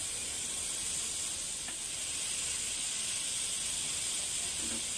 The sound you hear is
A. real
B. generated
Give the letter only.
A